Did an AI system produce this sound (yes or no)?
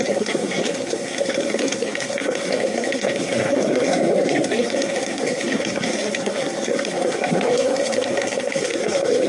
yes